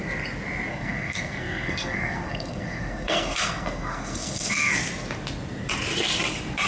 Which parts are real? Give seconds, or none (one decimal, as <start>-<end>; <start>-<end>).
0.0-0.7; 4.7-6.7